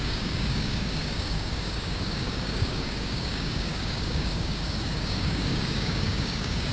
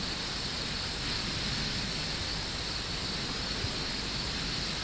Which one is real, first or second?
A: second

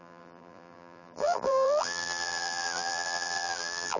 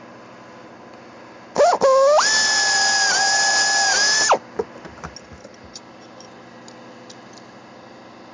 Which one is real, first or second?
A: second